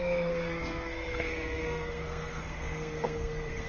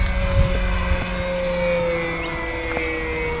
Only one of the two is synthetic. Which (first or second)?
first